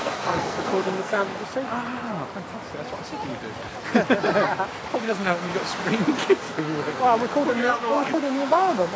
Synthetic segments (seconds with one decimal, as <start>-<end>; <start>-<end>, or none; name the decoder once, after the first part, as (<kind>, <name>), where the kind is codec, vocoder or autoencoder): 0.0-1.3 (codec, SNAC); 5.0-5.5; 6.3-7.0; 7.5-9.0